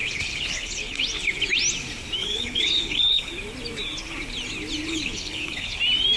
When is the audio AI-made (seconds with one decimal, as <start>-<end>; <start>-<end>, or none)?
0.0-1.0; 2.2-3.3; 4.9-5.8